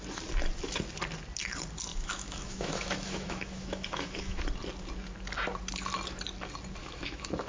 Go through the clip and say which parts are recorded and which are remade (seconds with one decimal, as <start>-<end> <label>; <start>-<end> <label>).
0.0-1.9 recorded; 1.9-4.4 remade; 4.4-6.8 recorded; 6.8-7.5 remade